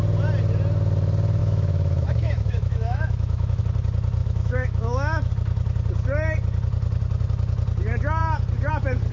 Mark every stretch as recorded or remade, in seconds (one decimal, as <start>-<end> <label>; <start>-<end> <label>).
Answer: 0.0-1.4 recorded; 1.4-3.6 remade; 3.6-4.2 recorded; 4.2-5.3 remade; 5.3-9.1 recorded